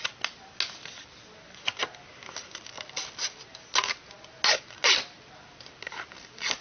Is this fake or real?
real